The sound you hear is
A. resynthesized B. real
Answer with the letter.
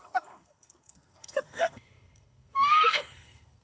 A